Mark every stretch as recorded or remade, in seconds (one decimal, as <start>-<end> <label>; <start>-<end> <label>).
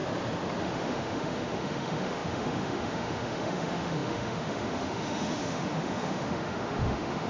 0.0-0.6 recorded; 0.6-7.3 remade